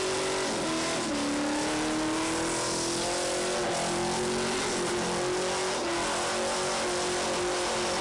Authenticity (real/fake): real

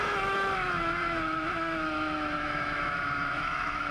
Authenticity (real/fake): fake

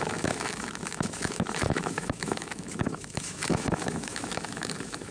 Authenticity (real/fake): fake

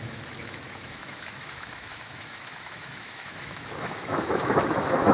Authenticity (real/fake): fake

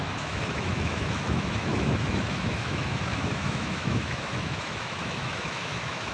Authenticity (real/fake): fake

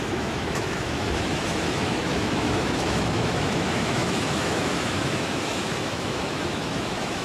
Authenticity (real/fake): fake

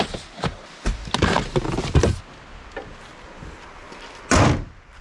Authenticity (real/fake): real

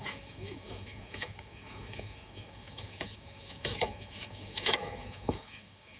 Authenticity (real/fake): fake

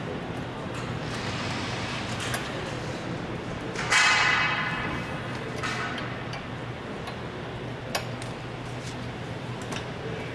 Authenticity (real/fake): real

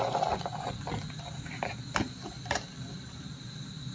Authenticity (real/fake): real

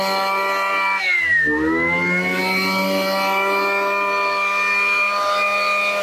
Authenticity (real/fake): real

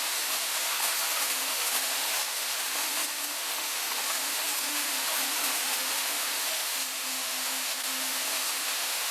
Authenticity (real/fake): fake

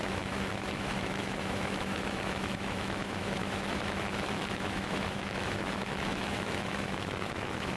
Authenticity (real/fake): fake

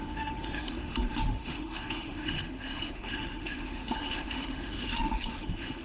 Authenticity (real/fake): fake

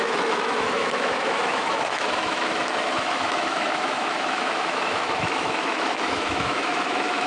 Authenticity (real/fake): fake